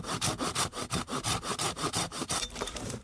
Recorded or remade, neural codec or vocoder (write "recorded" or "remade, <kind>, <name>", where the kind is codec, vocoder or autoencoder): remade, vocoder, BigVGAN v2